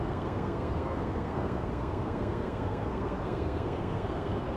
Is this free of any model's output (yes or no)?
no